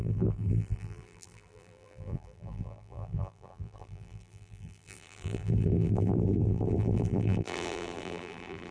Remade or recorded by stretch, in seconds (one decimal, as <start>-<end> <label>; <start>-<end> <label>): 0.0-8.7 remade